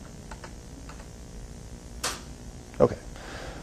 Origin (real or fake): real